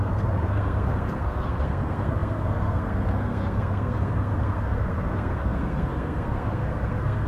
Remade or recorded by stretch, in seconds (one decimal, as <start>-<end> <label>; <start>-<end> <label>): 0.0-7.3 remade